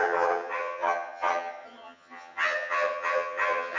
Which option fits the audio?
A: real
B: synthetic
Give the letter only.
B